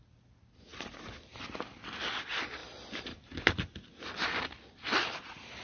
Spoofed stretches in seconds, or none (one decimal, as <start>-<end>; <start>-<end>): none